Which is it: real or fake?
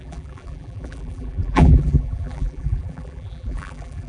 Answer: fake